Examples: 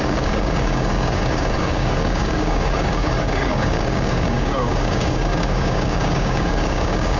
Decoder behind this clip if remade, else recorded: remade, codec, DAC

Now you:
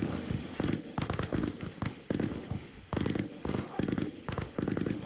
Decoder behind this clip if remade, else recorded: remade, autoencoder, DAC-VAE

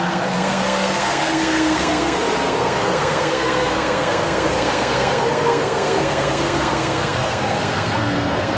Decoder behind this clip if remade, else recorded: remade, codec, SNAC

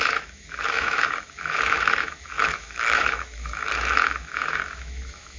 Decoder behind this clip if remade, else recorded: remade, autoencoder, DAC-VAE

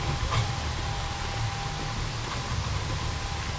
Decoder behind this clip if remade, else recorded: recorded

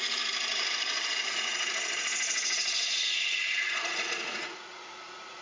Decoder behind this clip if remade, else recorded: remade, vocoder, Vocos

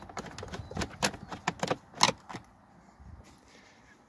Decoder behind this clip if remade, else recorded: recorded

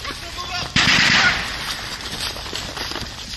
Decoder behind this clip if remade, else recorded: remade, vocoder, BigVGAN v2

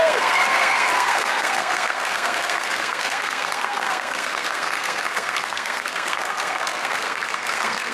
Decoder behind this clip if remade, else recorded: remade, codec, SNAC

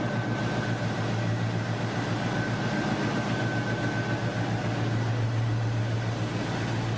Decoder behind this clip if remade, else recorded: recorded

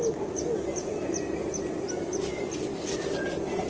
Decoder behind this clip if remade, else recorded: recorded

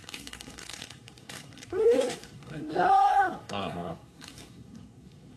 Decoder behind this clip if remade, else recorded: remade, codec, SNAC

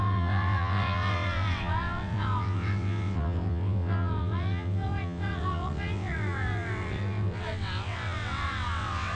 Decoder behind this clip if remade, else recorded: remade, vocoder, WaveNeXt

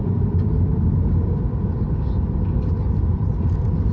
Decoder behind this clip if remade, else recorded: recorded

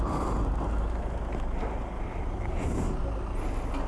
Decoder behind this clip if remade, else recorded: recorded